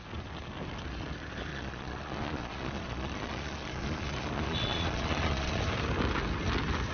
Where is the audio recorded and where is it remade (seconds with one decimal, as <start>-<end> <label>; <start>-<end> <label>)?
0.0-1.5 recorded; 1.5-5.6 remade; 5.6-6.9 recorded